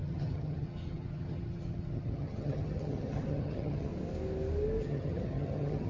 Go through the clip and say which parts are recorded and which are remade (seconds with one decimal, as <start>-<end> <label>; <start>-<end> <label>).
0.0-3.9 remade; 3.9-4.8 recorded; 4.8-5.9 remade